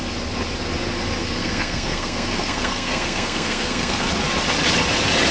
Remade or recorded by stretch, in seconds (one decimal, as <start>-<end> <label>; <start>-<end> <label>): 0.0-1.2 recorded; 1.2-4.1 remade; 4.1-5.3 recorded